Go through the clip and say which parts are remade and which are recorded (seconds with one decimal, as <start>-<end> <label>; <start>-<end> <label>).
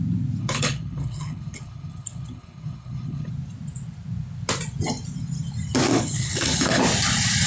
0.0-0.4 recorded; 0.4-3.3 remade; 3.3-5.9 recorded; 5.9-6.8 remade; 6.8-7.5 recorded